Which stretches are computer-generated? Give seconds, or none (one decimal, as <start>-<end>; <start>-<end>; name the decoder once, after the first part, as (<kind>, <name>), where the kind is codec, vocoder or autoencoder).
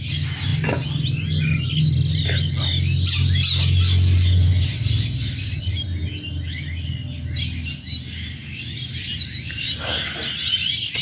none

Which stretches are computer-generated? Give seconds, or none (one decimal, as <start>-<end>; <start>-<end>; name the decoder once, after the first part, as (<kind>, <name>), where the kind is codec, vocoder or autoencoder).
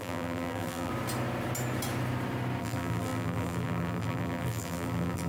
0.0-0.9 (vocoder, BigVGAN v2); 2.6-5.3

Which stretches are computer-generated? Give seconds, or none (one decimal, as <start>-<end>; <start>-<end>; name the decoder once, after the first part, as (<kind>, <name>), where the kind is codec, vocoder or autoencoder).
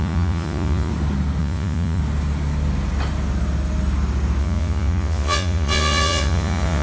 0.0-0.9 (vocoder, Vocos); 1.4-2.0; 4.4-6.8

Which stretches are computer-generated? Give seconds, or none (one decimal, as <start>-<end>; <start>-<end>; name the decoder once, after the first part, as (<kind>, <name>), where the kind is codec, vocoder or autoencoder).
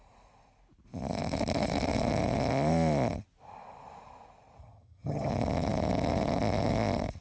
4.6-5.3 (vocoder, HiFi-GAN)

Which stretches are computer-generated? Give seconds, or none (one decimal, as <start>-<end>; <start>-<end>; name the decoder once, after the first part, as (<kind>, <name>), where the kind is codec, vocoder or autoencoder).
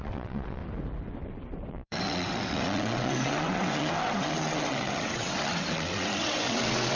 0.0-0.6 (vocoder, WaveNeXt); 1.7-7.0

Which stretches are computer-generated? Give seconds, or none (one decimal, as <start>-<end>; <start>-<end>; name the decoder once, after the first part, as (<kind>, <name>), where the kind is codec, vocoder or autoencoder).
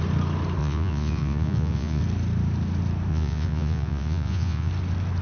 0.6-2.0 (vocoder, Vocos); 3.1-4.7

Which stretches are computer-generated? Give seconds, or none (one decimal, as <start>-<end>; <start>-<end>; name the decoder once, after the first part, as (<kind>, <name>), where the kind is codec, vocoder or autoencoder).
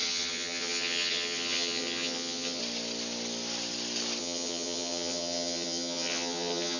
0.0-2.6 (vocoder, HiFi-GAN); 4.2-6.8